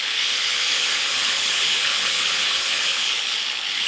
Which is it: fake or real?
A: fake